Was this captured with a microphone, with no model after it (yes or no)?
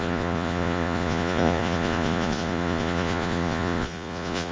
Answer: no